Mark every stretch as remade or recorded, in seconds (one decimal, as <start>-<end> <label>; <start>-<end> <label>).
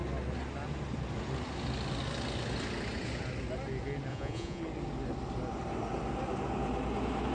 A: 0.0-4.1 recorded; 4.1-4.6 remade; 4.6-7.3 recorded